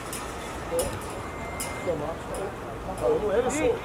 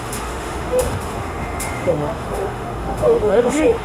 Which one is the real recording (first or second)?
first